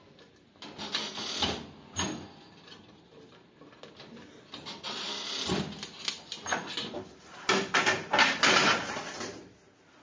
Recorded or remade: recorded